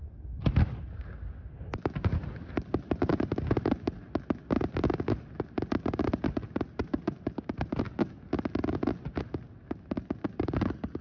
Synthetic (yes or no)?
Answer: no